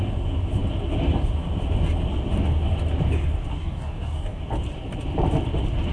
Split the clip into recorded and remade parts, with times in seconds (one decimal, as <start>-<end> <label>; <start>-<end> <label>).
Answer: 0.0-3.5 recorded; 3.5-4.4 remade; 4.4-5.9 recorded